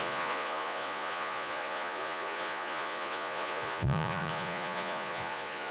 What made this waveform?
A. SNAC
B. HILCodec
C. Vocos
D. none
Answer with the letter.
C